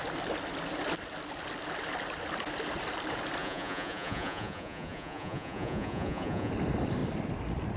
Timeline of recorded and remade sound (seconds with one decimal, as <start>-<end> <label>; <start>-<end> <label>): 0.0-3.4 recorded; 3.4-6.5 remade; 6.5-7.8 recorded